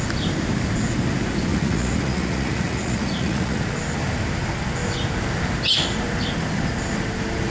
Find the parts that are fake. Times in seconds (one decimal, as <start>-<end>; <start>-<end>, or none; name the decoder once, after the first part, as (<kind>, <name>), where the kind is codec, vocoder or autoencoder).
1.5-3.6 (vocoder, Vocos)